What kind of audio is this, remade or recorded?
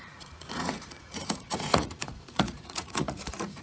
remade